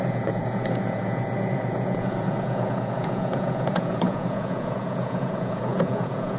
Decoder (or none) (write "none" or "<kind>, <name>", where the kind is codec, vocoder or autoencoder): vocoder, Vocos